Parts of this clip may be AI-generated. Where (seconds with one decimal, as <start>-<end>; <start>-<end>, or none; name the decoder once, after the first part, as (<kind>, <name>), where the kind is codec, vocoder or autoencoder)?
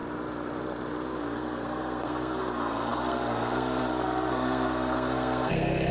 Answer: 1.2-5.9 (codec, SNAC)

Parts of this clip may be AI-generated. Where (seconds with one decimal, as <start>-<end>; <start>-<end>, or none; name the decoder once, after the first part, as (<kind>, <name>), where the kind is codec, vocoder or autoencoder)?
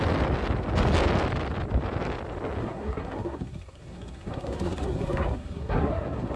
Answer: 2.6-6.4 (codec, SNAC)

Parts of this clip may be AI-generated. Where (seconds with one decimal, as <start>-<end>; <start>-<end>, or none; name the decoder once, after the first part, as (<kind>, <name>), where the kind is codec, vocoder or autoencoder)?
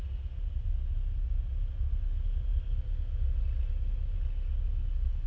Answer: none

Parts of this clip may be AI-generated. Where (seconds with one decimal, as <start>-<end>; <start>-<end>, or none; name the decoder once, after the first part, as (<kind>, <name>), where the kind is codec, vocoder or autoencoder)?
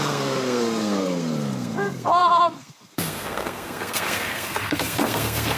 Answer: 0.0-5.6 (codec, SNAC)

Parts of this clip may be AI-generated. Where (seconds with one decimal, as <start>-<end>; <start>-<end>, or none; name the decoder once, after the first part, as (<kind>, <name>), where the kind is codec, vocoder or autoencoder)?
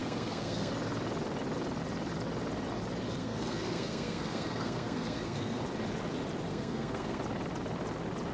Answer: 0.0-0.7 (codec, SNAC); 3.2-5.6; 6.5-7.2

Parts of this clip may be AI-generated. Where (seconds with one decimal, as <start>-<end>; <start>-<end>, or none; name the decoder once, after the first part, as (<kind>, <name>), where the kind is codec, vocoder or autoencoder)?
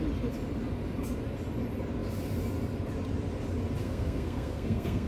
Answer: 3.8-5.1 (codec, SNAC)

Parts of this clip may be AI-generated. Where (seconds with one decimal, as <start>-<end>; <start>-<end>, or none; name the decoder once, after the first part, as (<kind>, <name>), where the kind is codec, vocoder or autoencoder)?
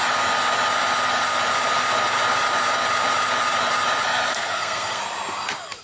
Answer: 4.3-5.0 (codec, SNAC)